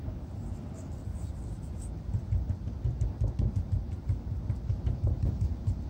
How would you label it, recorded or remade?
recorded